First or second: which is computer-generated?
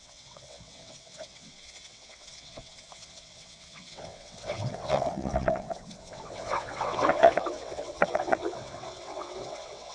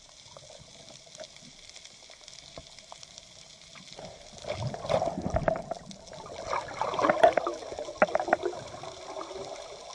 first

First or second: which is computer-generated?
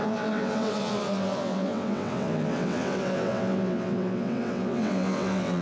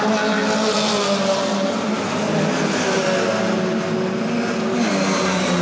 first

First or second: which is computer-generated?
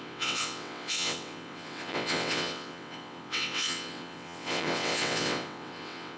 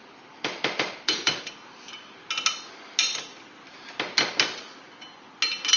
first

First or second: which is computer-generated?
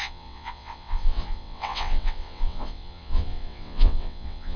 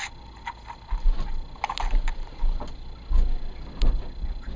first